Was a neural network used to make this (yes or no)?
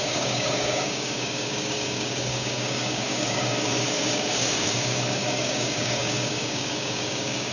yes